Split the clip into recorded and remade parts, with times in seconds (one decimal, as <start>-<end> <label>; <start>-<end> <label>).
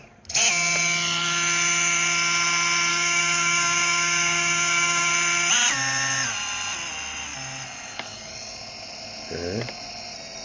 0.0-2.9 recorded; 2.9-5.1 remade; 5.1-10.4 recorded